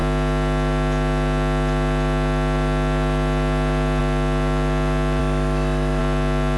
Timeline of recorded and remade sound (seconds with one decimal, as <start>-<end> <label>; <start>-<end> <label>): 0.0-5.2 recorded; 5.2-6.0 remade; 6.0-6.6 recorded